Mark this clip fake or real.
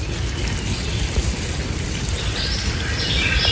real